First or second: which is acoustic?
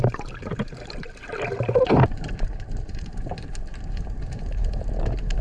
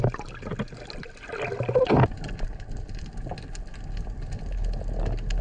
second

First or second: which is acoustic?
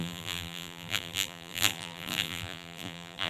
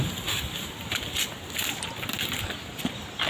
second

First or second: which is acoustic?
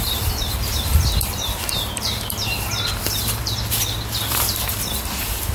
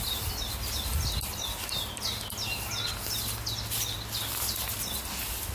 second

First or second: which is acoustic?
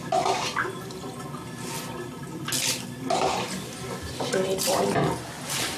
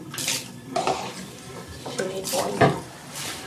first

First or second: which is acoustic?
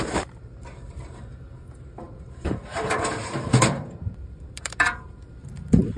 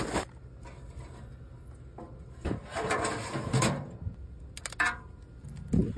second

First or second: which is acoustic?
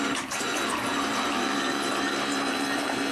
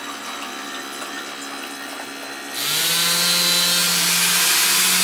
second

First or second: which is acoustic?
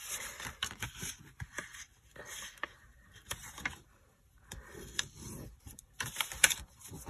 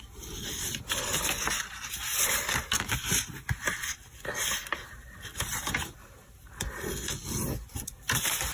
second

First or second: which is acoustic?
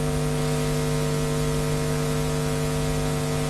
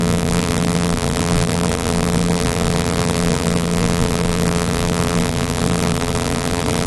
first